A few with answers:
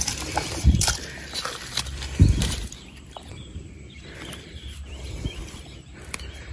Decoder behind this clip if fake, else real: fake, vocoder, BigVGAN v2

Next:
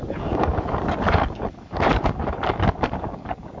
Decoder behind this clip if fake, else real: fake, codec, DAC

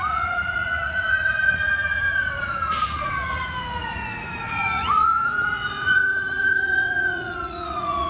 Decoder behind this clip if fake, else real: fake, vocoder, Vocos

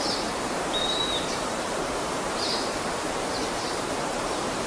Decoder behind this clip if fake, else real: fake, vocoder, BigVGAN v2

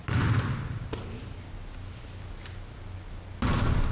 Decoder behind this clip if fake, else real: real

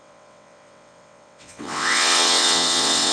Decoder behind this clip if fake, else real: fake, vocoder, WaveNeXt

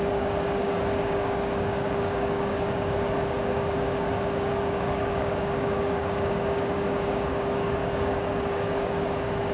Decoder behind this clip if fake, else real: fake, codec, DAC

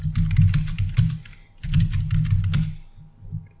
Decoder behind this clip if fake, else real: real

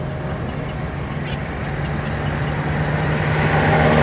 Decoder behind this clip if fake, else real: real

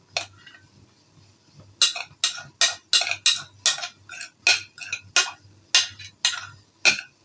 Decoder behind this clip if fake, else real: real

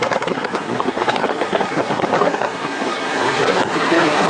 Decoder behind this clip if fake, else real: fake, codec, SNAC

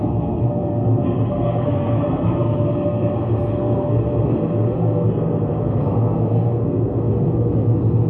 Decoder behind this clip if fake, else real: fake, codec, SNAC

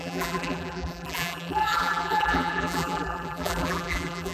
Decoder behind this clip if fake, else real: fake, vocoder, BigVGAN v2